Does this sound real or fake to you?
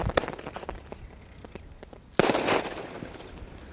real